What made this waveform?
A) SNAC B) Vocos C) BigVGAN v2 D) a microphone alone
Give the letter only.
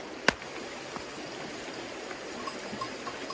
D